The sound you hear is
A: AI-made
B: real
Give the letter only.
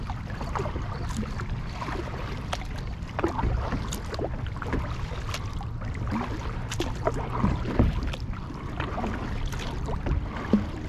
B